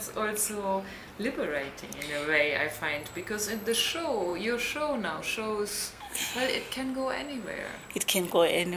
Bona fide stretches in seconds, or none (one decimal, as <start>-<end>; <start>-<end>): 0.0-5.7; 6.3-8.8